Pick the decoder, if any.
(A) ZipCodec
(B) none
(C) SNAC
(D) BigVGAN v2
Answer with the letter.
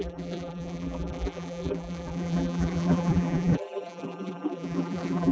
D